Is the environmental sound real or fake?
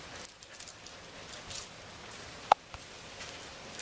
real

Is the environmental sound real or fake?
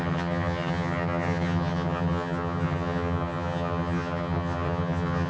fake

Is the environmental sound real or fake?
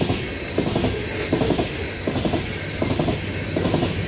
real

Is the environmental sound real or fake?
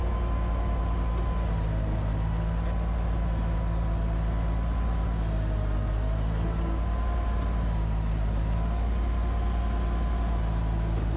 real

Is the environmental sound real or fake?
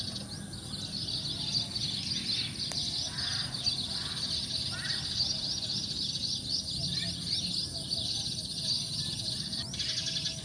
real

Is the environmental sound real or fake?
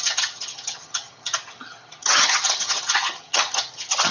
fake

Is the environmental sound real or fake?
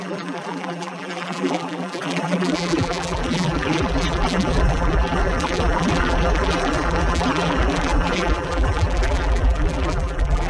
fake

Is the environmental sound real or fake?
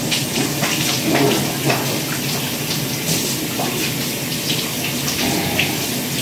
real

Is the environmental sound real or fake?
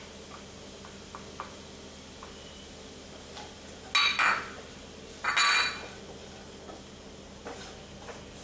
real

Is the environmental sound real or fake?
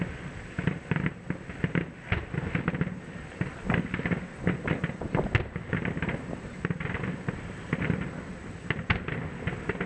real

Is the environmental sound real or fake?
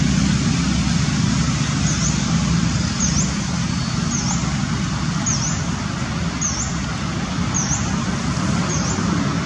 real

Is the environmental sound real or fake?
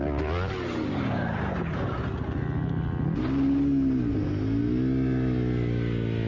real